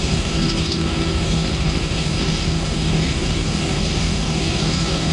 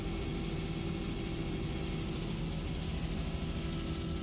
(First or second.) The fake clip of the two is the first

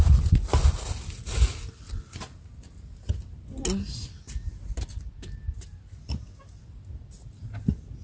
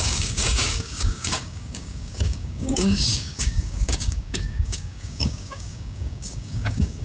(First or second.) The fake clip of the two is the second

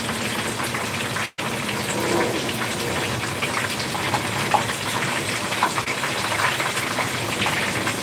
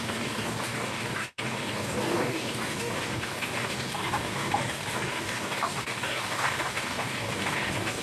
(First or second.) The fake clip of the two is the second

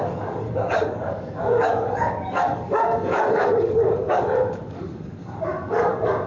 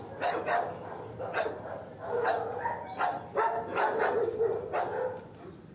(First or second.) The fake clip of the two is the first